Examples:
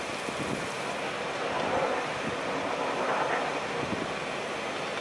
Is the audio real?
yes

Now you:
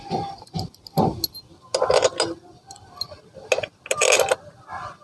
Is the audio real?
yes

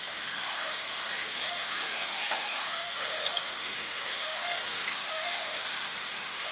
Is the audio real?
no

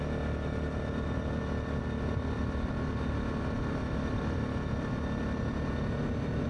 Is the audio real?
yes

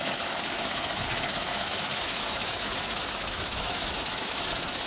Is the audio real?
no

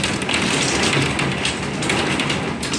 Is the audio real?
yes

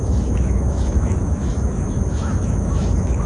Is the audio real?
no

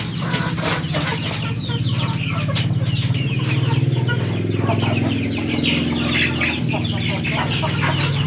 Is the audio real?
yes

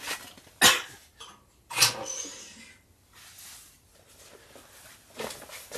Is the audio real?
yes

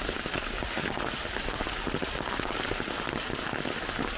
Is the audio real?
yes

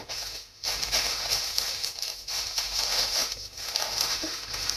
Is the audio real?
no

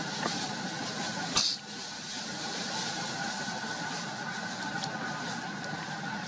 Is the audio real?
yes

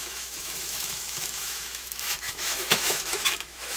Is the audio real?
no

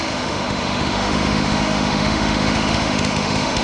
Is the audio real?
no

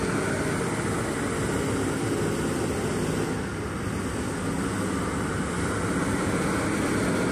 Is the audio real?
yes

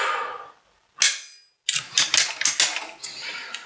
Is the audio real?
yes